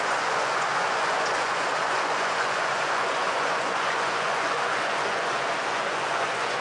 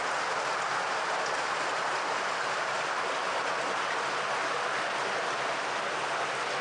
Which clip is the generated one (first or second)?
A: first